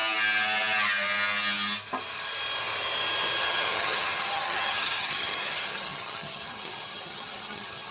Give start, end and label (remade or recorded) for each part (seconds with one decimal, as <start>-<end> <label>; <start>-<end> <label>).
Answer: 0.0-3.4 recorded; 3.4-7.9 remade